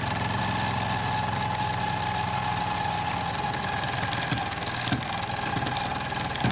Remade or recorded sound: recorded